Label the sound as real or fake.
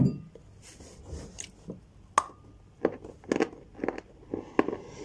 real